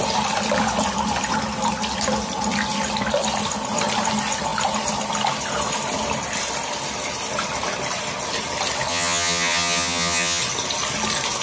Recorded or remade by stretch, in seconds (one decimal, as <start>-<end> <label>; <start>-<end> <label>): 0.0-8.9 recorded; 8.9-10.4 remade; 10.4-11.4 recorded